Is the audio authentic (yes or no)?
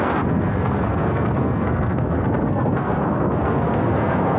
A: no